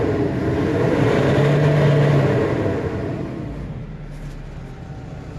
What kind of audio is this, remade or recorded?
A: recorded